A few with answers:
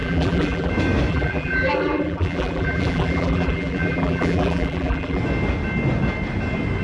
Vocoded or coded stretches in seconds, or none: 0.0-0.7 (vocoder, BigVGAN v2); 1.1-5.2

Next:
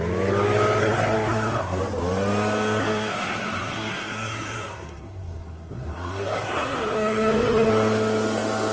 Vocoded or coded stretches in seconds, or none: 0.8-1.8 (codec, SNAC); 2.8-7.7

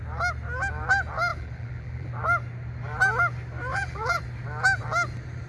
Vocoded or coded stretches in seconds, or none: 1.3-2.1 (vocoder, BigVGAN v2); 3.7-4.2

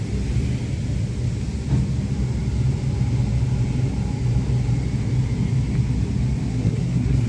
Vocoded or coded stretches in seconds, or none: 6.5-7.3 (codec, SNAC)